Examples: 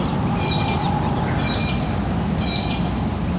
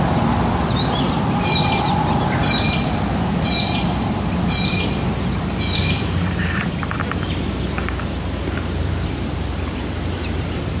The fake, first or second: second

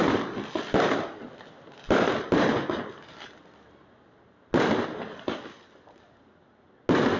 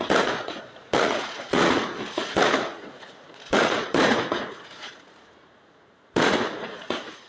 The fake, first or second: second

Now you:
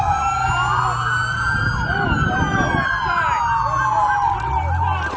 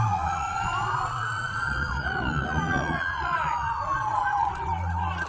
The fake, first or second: second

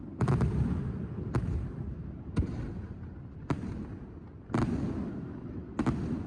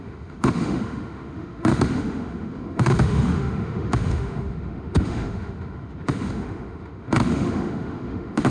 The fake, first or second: second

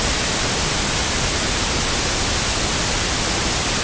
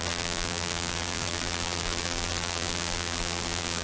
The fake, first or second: second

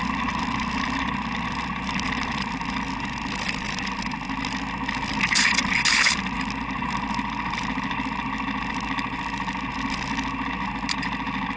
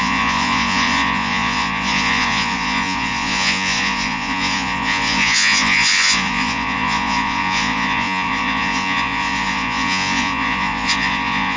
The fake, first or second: second